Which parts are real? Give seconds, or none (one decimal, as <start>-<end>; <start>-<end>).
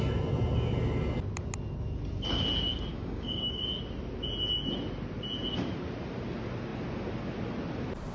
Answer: 0.0-2.9; 3.6-8.1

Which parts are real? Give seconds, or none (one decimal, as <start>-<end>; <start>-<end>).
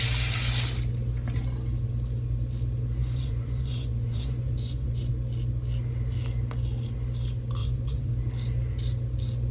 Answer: 0.0-3.0; 5.1-7.6; 8.1-9.5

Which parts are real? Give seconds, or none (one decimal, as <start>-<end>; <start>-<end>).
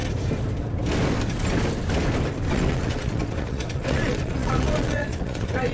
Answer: 0.0-2.5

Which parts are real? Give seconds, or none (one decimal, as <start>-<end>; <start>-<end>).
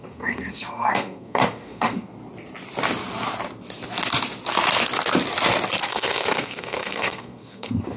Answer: 2.2-5.9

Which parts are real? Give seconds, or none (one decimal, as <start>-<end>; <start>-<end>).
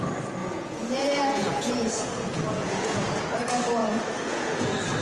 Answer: 0.0-0.4; 3.4-3.8; 4.6-5.0